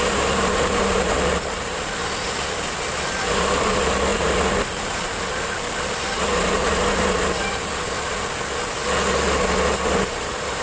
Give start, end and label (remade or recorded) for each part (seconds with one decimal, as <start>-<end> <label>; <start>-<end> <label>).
0.0-2.0 remade; 2.0-2.9 recorded; 2.9-7.7 remade; 7.7-10.0 recorded; 10.0-10.6 remade